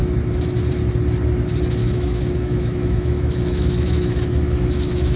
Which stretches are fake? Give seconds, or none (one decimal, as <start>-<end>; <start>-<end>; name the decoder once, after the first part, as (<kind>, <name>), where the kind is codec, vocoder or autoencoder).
1.8-5.2 (autoencoder, DAC-VAE)

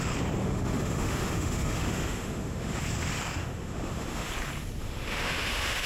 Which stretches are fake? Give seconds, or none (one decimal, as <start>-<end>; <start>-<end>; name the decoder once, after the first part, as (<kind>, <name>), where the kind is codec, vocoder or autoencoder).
0.4-2.8 (autoencoder, DAC-VAE); 3.4-4.3; 4.8-5.9

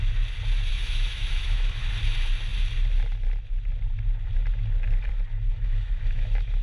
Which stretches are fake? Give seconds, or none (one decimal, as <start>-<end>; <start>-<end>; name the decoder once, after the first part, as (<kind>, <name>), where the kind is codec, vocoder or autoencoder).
0.7-1.9 (autoencoder, DAC-VAE); 5.5-6.6

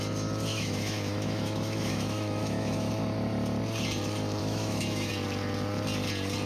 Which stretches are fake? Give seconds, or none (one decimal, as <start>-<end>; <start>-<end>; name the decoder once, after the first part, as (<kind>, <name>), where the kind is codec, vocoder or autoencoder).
0.5-2.9 (autoencoder, DAC-VAE); 4.4-5.1

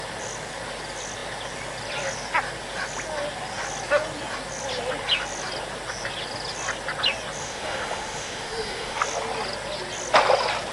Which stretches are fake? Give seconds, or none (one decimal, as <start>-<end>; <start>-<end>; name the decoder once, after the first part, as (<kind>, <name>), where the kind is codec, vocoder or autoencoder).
7.4-9.0 (autoencoder, DAC-VAE)

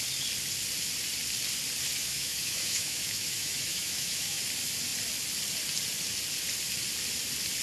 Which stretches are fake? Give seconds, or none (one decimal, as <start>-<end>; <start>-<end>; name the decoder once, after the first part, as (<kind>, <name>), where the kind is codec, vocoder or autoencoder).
2.0-4.4 (autoencoder, DAC-VAE)